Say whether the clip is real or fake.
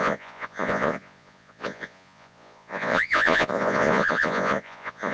fake